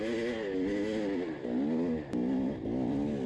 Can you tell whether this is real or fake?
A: real